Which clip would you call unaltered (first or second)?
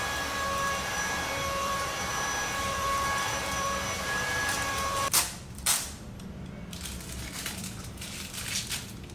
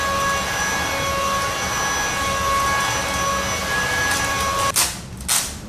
second